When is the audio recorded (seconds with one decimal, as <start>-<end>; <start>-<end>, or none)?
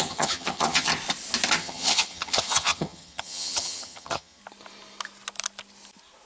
0.9-1.6; 4.4-6.3